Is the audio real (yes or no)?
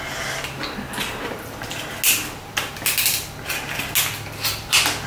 yes